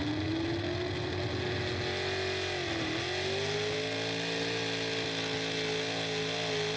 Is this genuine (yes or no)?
yes